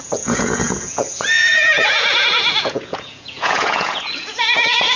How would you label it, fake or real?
fake